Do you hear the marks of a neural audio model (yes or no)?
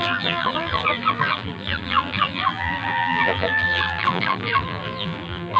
yes